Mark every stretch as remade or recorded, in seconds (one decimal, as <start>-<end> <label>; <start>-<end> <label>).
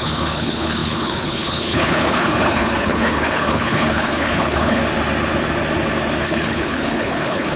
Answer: 0.0-4.8 remade; 4.8-6.2 recorded; 6.2-7.6 remade